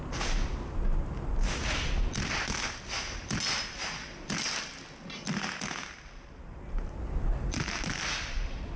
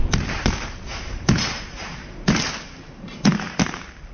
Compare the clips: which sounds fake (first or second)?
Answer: second